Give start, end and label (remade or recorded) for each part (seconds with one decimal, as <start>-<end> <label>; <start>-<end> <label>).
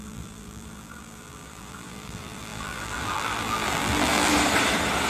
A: 0.0-4.3 remade; 4.3-5.1 recorded